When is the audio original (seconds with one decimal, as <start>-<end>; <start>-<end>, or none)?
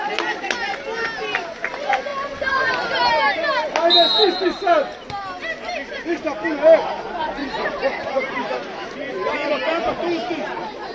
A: 0.0-7.4; 9.7-10.9